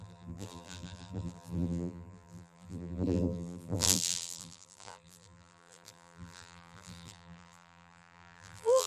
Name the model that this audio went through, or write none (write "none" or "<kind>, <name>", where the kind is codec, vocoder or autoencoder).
vocoder, BigVGAN v2